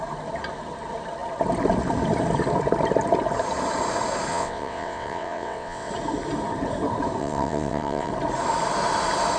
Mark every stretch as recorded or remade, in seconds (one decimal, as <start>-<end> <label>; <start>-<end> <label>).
0.0-4.3 recorded; 4.3-5.9 remade; 5.9-7.2 recorded; 7.2-8.1 remade; 8.1-9.4 recorded